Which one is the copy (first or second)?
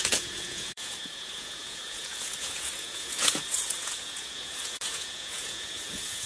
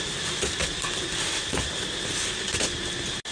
first